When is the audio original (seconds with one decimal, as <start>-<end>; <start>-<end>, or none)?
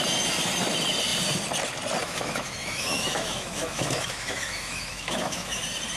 0.0-2.0; 5.6-6.0